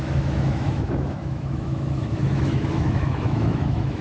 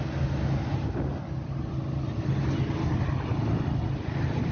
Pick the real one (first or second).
second